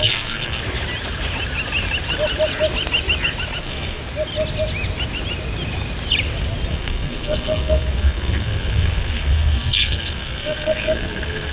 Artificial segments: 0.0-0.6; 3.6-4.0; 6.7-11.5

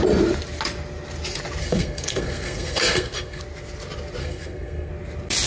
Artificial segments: 1.6-3.4; 4.2-4.9

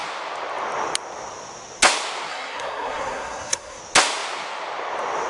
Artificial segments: 2.3-3.8

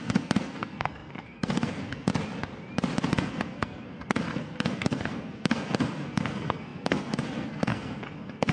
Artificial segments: 0.0-2.1; 3.1-8.5

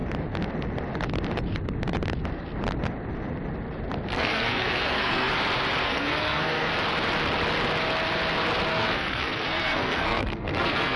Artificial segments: 4.1-5.3; 5.8-6.7; 8.7-11.0

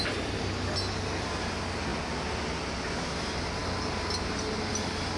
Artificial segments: none